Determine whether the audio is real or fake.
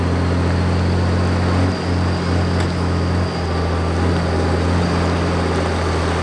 real